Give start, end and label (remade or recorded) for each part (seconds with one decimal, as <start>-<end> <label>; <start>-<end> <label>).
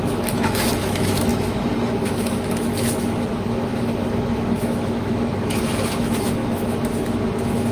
0.0-7.7 remade